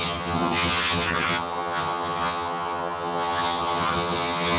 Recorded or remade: remade